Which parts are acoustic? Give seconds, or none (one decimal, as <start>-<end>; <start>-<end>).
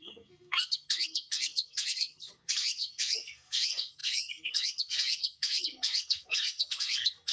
none